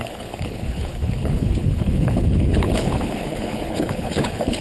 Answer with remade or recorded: remade